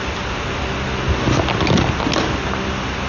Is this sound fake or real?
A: real